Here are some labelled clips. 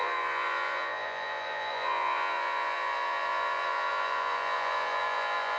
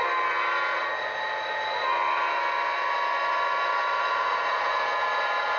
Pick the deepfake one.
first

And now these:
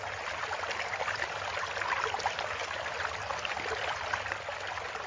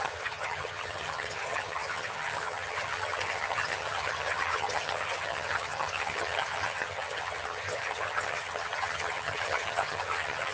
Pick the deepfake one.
second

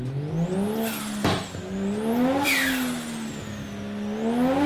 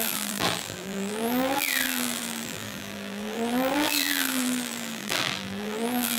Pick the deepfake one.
second